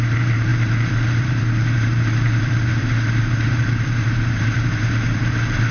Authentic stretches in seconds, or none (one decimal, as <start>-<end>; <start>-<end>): none